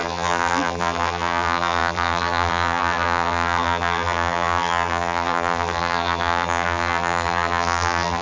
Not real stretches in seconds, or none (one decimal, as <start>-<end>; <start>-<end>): 0.0-8.2